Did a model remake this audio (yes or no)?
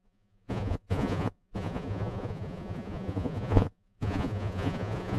yes